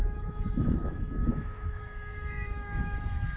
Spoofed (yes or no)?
yes